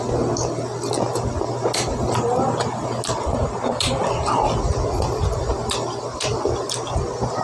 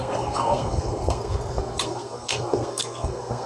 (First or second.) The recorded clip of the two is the first